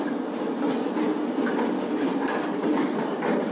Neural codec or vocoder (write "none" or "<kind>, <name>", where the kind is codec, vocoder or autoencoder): vocoder, BigVGAN v2